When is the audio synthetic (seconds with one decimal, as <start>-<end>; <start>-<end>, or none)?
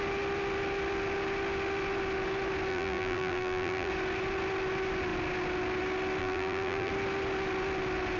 2.7-3.9; 6.2-6.9